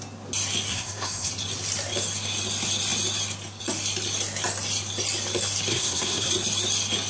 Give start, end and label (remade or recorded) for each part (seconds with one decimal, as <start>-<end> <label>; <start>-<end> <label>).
0.0-0.7 recorded; 0.7-1.3 remade; 1.3-5.7 recorded; 5.7-6.3 remade; 6.3-7.1 recorded